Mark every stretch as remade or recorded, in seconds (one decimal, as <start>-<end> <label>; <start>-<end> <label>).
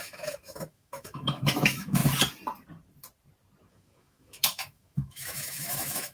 0.0-2.0 remade; 2.0-3.7 recorded; 3.7-6.1 remade